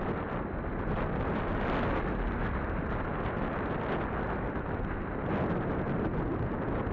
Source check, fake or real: real